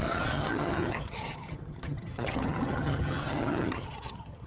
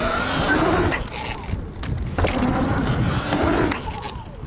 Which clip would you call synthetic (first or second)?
first